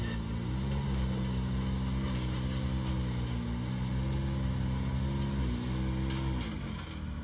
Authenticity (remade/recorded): recorded